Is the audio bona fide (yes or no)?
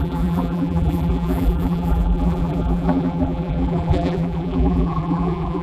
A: no